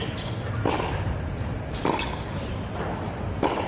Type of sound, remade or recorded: remade